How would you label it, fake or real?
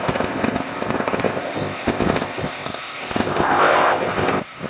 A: fake